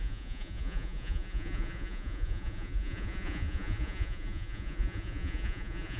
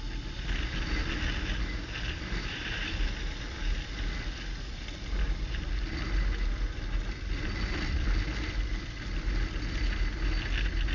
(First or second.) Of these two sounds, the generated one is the first